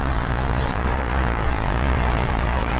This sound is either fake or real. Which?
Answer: fake